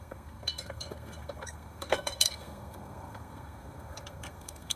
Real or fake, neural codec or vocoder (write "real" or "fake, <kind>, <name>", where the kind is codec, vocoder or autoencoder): fake, codec, SNAC